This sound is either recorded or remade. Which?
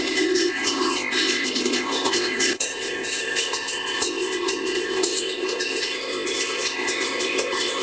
remade